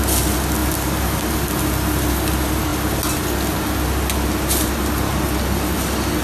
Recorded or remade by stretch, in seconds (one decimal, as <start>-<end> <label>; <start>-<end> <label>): 0.0-6.2 recorded